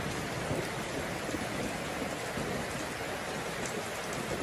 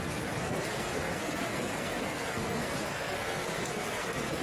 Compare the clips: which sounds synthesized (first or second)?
second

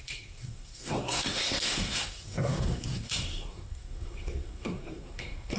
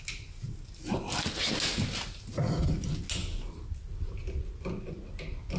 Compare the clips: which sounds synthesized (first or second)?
first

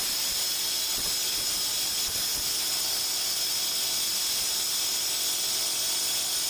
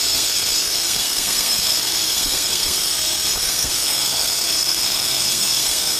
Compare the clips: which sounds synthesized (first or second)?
second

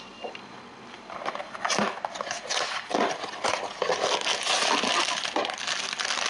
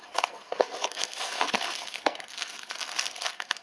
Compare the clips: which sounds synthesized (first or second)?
second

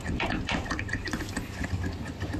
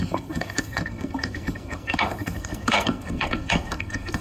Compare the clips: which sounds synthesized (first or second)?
second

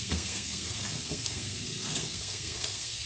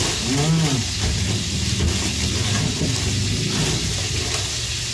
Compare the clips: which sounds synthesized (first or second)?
first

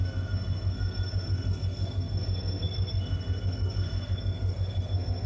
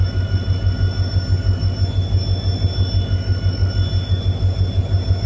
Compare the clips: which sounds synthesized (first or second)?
first